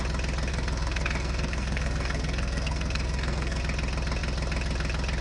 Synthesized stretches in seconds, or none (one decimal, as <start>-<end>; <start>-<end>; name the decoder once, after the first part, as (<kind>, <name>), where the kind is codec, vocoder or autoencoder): 0.5-3.6 (codec, SNAC)